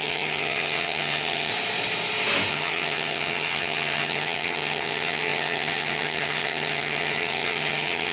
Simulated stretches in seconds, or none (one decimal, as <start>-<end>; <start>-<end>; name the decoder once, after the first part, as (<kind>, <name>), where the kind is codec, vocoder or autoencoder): 0.0-1.5 (vocoder, HiFi-GAN); 2.5-8.1